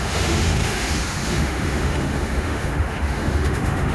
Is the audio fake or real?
fake